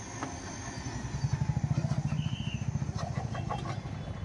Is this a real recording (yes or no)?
yes